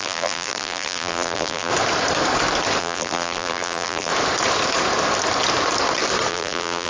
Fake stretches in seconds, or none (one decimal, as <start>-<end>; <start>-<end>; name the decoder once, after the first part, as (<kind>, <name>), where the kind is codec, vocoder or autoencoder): 0.0-1.7 (vocoder, BigVGAN v2); 2.8-4.1; 6.3-6.9